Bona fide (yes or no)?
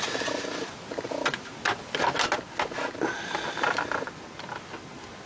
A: yes